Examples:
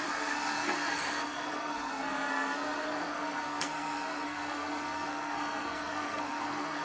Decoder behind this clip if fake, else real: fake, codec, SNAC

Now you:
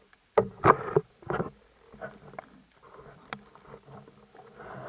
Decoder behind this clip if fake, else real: real